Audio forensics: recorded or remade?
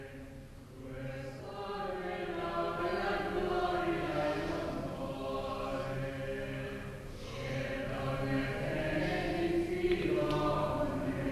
recorded